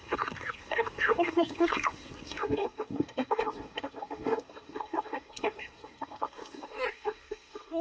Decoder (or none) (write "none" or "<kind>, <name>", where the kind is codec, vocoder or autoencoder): codec, SNAC